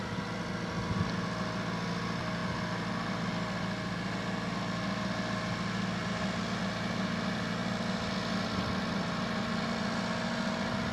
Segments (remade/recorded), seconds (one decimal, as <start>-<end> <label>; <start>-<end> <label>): 0.0-10.9 recorded

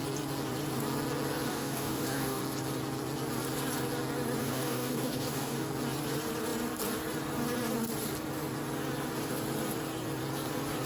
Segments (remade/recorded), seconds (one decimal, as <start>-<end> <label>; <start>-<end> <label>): 0.0-1.5 recorded; 1.5-2.4 remade; 2.4-4.4 recorded; 4.4-5.7 remade; 5.7-10.9 recorded